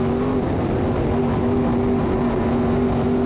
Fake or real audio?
real